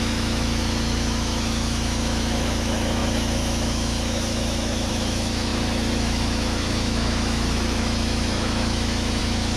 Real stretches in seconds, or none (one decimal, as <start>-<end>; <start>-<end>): none